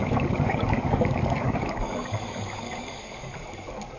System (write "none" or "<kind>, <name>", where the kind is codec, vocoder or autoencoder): codec, DAC